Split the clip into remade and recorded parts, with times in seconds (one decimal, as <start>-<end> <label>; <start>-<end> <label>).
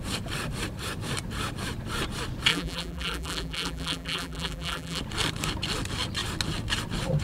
0.0-2.5 recorded; 2.5-5.0 remade; 5.0-7.2 recorded